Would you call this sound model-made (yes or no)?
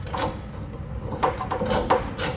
no